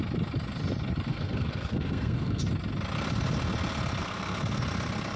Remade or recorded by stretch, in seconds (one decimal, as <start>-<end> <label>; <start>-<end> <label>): 0.0-1.1 recorded; 1.1-2.4 remade; 2.4-4.0 recorded; 4.0-4.6 remade; 4.6-5.2 recorded